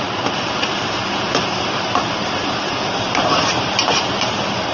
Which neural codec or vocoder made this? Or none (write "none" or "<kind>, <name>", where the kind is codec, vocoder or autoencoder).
vocoder, BigVGAN v2